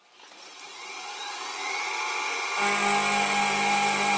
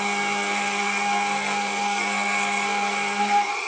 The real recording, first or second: first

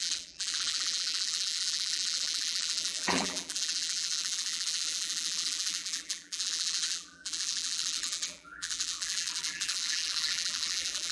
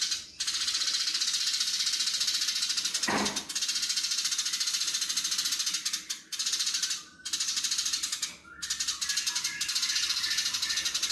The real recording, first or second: second